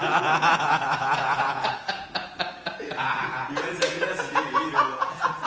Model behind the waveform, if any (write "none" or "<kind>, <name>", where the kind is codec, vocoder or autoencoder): vocoder, Vocos